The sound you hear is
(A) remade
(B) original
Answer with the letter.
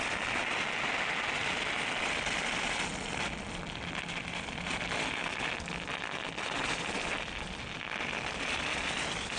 B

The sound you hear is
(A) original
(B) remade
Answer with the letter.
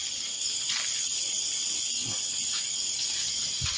A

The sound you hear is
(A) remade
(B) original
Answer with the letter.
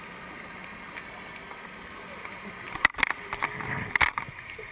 B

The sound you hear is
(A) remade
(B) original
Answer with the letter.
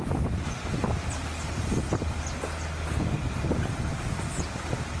B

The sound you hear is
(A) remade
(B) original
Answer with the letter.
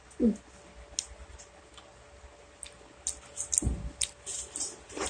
B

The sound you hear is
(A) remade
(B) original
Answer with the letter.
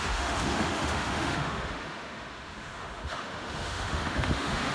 A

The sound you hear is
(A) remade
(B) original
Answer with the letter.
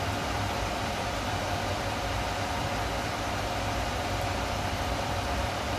A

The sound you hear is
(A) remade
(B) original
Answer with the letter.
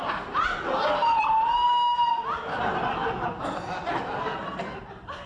B